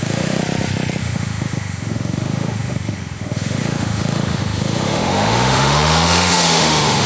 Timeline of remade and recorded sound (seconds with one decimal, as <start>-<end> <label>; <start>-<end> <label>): 0.0-0.4 remade; 0.4-1.0 recorded; 1.0-7.1 remade